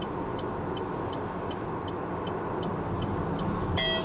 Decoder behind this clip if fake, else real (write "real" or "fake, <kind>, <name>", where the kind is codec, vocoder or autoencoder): real